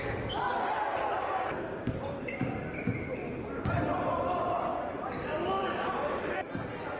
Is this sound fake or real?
fake